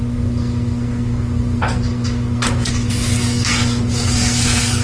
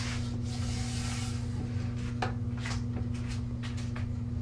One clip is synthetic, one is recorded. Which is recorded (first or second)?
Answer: second